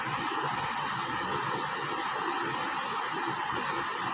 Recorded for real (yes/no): yes